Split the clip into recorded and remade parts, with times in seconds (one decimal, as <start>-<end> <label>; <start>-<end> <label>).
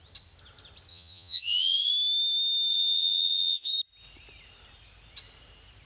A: 0.0-0.9 recorded; 0.9-1.9 remade; 1.9-2.7 recorded; 2.7-3.8 remade; 3.8-5.9 recorded